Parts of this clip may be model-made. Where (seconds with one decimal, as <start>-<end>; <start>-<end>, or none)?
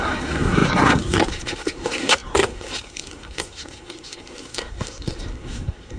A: 0.0-6.0